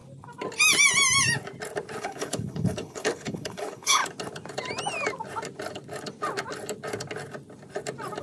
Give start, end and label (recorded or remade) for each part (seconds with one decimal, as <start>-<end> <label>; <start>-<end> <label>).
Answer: 0.0-2.0 recorded; 2.0-4.0 remade; 4.0-8.2 recorded